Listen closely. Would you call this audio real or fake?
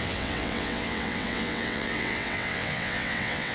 fake